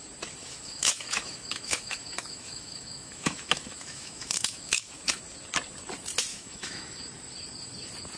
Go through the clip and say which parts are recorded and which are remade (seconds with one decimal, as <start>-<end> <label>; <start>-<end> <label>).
0.0-0.4 recorded; 0.4-5.2 remade; 5.2-6.3 recorded; 6.3-7.0 remade; 7.0-8.2 recorded